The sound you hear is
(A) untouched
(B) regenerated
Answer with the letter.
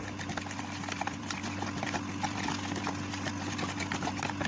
A